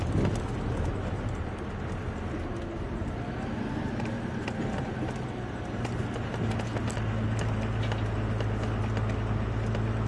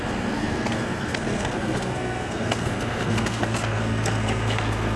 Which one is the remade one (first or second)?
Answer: second